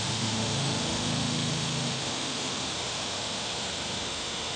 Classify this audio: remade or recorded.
remade